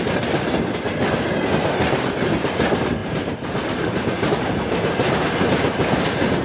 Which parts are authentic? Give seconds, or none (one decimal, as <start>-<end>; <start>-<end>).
0.0-3.0; 4.3-6.4